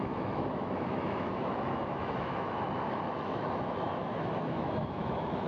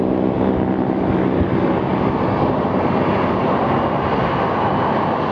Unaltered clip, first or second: second